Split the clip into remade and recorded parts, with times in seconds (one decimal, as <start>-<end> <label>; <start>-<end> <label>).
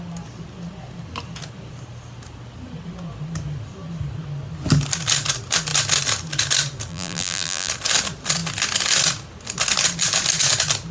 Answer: 0.0-6.9 recorded; 6.9-7.7 remade; 7.7-10.9 recorded